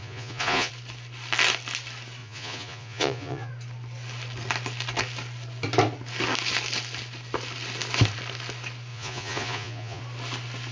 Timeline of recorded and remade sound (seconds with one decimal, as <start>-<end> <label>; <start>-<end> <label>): 0.0-0.7 remade; 0.7-2.2 recorded; 2.2-3.5 remade; 3.5-8.9 recorded; 8.9-10.0 remade; 10.0-10.7 recorded